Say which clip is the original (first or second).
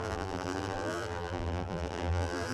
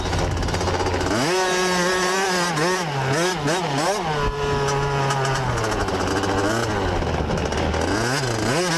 second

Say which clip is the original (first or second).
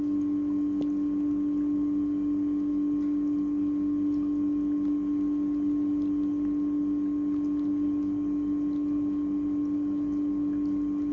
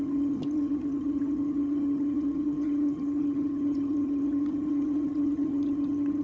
first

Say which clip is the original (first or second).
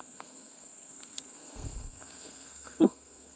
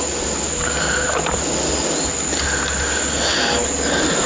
second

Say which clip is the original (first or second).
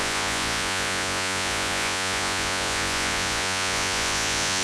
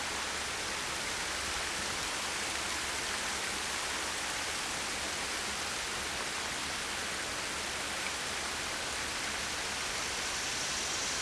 second